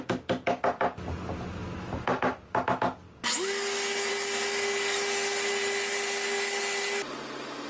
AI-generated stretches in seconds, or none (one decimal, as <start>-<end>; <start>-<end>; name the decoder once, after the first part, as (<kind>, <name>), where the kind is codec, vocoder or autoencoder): none